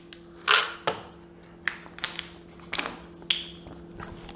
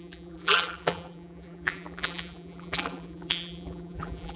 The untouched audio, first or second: first